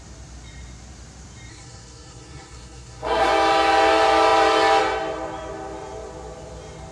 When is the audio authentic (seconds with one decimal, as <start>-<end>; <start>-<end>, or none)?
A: 0.0-1.5; 3.3-6.9